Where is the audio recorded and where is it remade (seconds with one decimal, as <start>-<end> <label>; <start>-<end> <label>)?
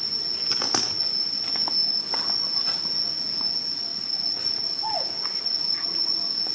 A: 0.0-3.9 recorded; 3.9-6.0 remade; 6.0-6.5 recorded